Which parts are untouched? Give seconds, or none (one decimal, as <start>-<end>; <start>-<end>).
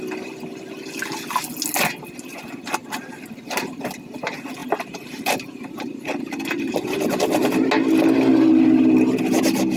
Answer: 0.0-2.8; 3.8-4.6; 7.5-9.8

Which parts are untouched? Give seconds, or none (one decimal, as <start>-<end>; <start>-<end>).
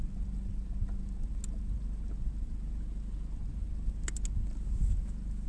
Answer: 0.0-5.5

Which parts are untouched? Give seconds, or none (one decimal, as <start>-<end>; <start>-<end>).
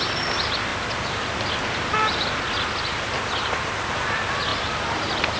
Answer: 0.0-4.5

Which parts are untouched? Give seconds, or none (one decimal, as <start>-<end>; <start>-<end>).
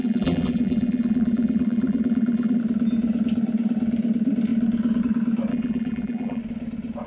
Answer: 2.6-5.5; 6.4-7.1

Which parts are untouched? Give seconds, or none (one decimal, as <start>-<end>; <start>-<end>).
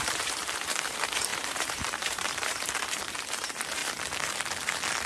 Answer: 3.8-5.1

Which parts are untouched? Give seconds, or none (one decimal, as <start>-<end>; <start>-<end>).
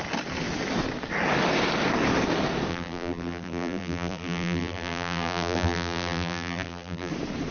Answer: 0.0-2.7; 7.1-7.5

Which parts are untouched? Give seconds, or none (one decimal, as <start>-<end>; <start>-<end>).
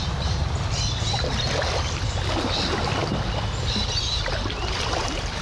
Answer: 0.4-3.6